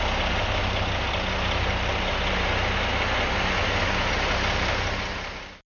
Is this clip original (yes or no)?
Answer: yes